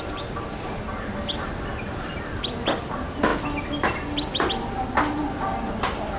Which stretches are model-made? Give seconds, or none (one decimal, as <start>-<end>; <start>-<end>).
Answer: none